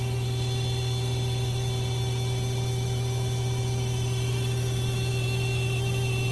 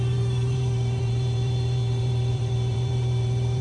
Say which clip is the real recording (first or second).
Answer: first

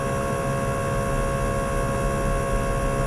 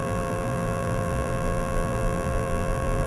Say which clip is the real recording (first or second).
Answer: first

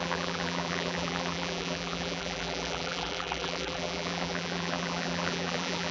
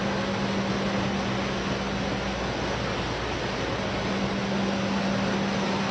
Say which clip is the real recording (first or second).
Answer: second